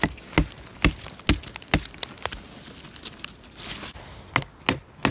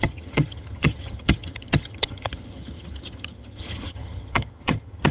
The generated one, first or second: second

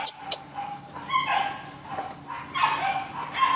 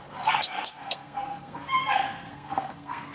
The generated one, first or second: second